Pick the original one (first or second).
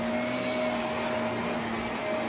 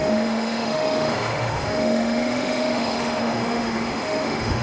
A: first